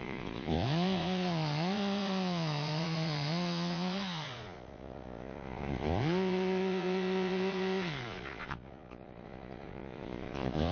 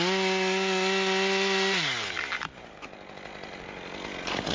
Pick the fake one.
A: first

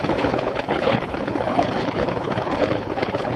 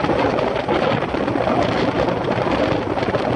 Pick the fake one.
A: first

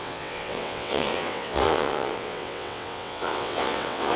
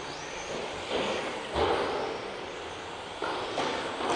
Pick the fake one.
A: first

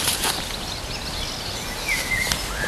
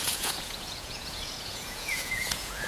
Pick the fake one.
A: second